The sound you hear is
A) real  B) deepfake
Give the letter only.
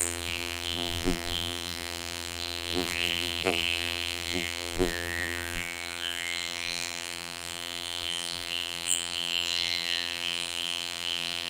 B